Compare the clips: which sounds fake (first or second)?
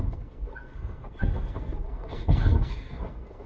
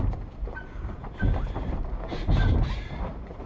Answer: first